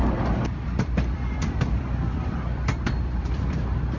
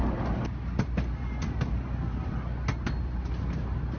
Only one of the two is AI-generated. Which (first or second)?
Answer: first